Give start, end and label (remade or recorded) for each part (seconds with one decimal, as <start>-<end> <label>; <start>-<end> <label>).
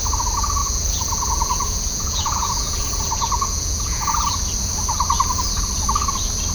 0.0-0.6 recorded; 0.6-4.4 remade; 4.4-6.5 recorded